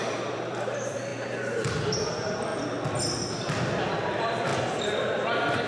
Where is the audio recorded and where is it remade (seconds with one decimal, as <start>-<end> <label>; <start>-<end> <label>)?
0.0-1.1 remade; 1.1-2.1 recorded; 2.1-2.5 remade; 2.5-3.9 recorded; 3.9-4.5 remade; 4.5-5.7 recorded